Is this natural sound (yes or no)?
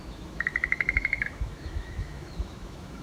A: no